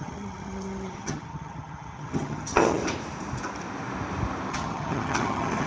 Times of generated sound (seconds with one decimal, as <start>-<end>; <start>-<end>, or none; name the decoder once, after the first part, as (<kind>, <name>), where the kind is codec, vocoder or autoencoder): 0.0-2.8 (vocoder, HiFi-GAN); 4.5-5.7